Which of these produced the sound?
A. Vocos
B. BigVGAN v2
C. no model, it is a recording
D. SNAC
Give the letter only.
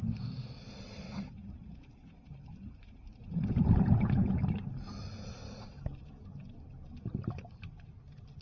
C